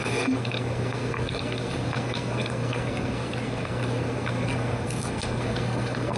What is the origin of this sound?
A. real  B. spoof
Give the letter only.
B